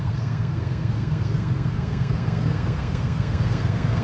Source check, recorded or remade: remade